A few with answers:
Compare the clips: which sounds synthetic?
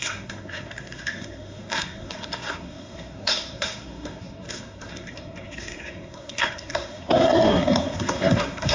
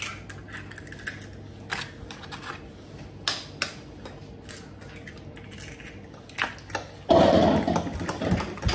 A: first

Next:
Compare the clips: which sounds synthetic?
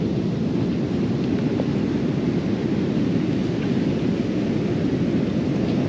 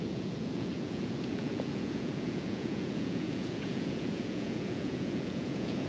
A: second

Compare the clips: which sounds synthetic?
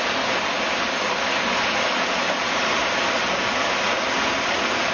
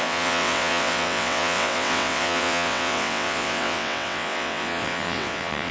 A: second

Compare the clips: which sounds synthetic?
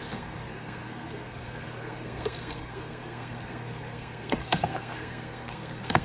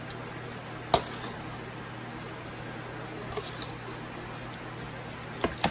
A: first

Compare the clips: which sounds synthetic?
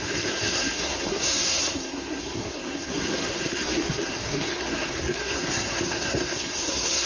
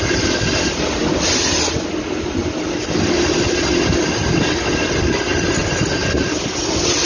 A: first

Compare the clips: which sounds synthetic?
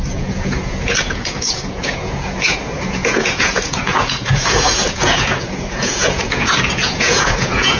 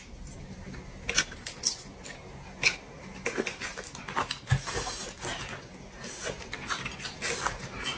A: first